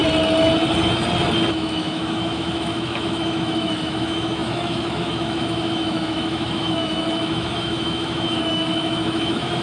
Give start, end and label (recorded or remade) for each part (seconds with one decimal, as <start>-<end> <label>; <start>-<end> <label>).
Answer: 0.0-1.5 recorded; 1.5-9.6 remade